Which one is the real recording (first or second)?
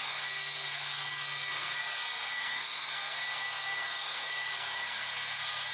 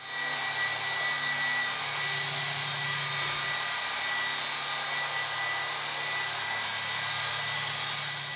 second